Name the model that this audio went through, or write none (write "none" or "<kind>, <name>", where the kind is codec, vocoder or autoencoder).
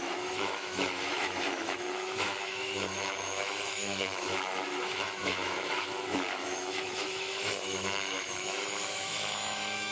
autoencoder, DAC-VAE